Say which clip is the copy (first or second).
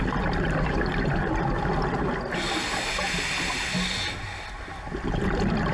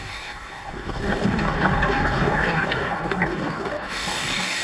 second